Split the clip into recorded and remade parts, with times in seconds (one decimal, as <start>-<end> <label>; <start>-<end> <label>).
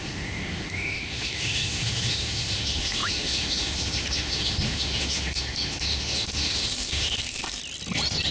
0.0-7.6 remade; 7.6-8.3 recorded